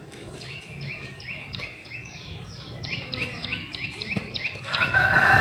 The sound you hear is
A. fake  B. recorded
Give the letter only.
A